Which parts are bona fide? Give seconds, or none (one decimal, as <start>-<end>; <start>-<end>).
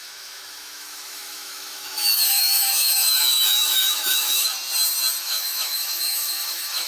4.5-5.2